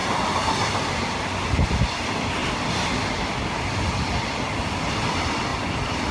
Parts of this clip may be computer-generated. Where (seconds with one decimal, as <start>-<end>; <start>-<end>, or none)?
0.0-1.8; 2.4-5.0